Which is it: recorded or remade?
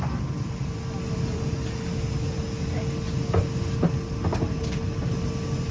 recorded